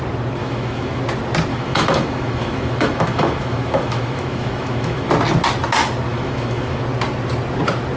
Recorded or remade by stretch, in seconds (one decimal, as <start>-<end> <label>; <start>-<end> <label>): 0.0-0.4 recorded; 0.4-1.0 remade; 1.0-1.5 recorded; 1.5-5.1 remade; 5.1-6.1 recorded; 6.1-6.8 remade; 6.8-8.0 recorded